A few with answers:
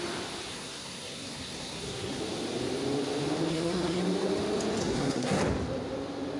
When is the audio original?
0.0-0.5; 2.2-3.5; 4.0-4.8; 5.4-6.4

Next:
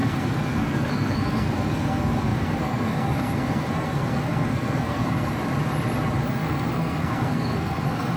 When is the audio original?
5.4-6.3

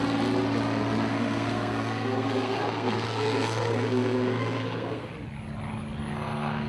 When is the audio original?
0.0-1.1; 5.1-6.1

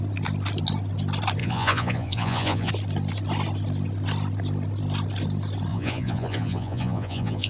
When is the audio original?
0.0-1.4; 2.7-5.7

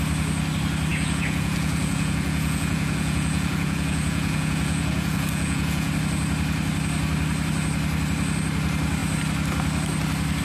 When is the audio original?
0.0-0.9; 5.9-10.4

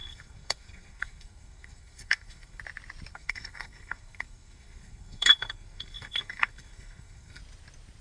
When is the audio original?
2.6-3.1; 7.4-8.0